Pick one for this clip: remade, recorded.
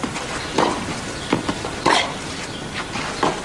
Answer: remade